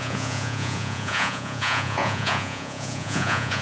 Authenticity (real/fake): fake